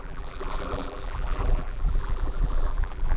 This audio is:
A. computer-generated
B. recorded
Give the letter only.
A